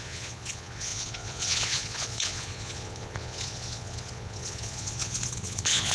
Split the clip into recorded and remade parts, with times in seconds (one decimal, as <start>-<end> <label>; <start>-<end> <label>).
0.0-5.9 remade